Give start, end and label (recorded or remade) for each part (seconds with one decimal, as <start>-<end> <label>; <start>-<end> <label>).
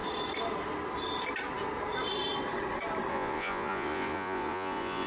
0.0-3.1 recorded; 3.1-5.1 remade